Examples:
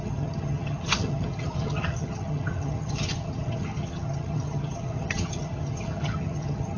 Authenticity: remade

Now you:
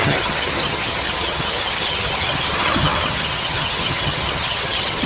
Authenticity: remade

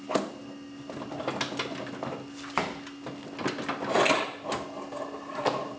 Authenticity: recorded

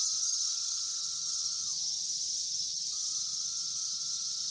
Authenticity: remade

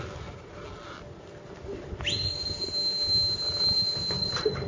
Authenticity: recorded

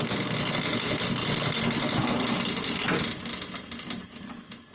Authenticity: recorded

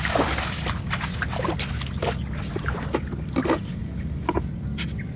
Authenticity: recorded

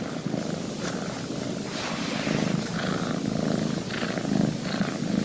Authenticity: recorded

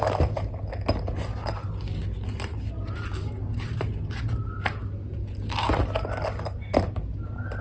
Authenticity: recorded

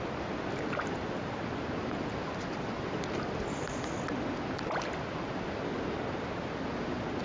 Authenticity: recorded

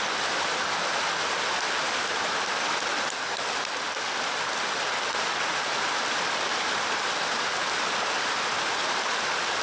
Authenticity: recorded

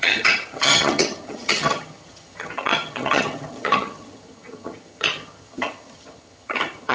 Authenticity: remade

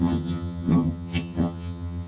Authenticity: remade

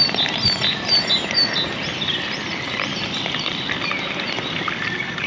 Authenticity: recorded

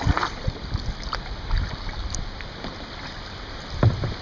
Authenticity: recorded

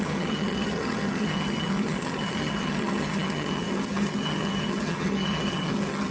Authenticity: remade